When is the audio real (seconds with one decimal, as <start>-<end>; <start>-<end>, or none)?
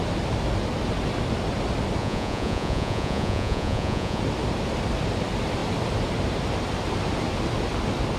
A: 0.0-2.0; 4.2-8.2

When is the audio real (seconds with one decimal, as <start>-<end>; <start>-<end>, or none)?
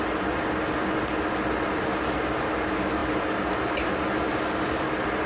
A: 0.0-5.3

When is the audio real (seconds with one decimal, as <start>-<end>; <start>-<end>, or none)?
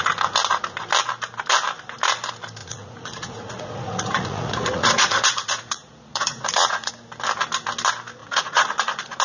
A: 0.0-2.6; 6.9-8.2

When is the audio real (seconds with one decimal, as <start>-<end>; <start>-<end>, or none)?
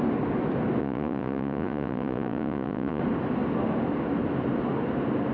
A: 0.0-0.8; 3.0-5.3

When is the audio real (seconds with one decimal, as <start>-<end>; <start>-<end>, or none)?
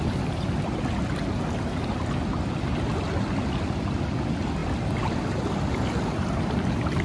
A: 0.0-7.0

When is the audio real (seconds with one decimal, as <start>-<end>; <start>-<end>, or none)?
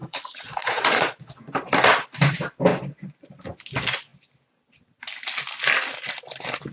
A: 1.3-6.7